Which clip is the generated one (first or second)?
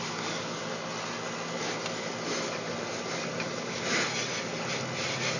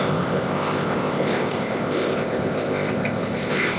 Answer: second